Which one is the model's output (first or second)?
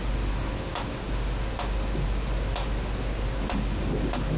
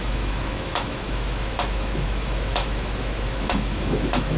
second